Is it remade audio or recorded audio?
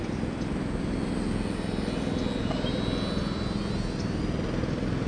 recorded